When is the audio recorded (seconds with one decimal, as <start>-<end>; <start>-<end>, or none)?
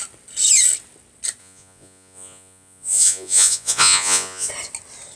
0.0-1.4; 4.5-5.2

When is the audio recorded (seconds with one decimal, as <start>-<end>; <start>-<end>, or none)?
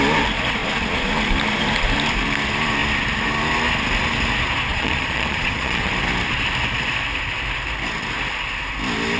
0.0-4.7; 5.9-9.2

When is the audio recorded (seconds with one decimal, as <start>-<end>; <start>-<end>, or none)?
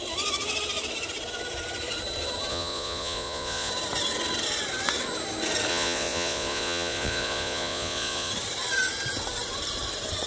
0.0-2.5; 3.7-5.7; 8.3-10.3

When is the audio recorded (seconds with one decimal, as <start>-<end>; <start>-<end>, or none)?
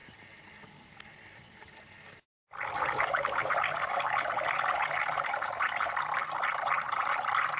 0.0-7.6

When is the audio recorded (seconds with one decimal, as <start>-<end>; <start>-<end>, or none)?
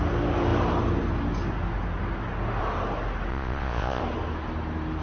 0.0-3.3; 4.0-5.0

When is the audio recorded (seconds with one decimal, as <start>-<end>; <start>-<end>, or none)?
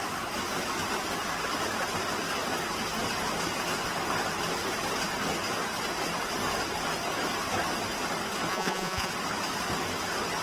0.0-8.5; 9.1-10.4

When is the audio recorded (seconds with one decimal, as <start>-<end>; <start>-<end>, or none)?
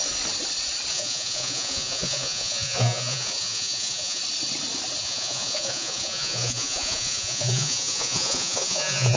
0.0-0.9; 4.2-5.0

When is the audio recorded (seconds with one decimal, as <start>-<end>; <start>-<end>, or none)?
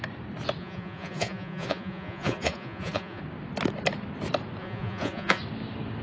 0.0-0.6; 3.2-4.6; 5.4-6.0